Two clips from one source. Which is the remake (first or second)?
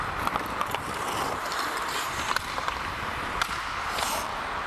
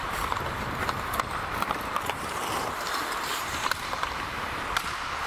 second